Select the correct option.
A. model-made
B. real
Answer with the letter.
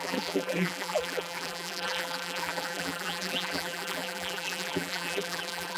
A